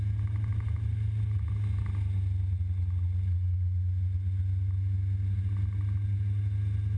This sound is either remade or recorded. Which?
recorded